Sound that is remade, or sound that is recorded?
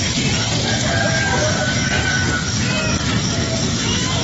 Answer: recorded